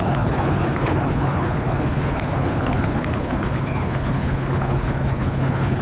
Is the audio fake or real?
fake